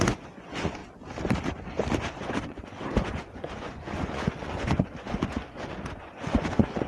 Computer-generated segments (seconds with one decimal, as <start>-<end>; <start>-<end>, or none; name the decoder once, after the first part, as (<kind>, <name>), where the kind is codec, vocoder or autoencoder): 0.0-0.8 (vocoder, Vocos); 2.1-6.9